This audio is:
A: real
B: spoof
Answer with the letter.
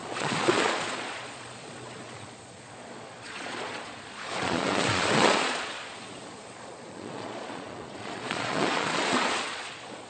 B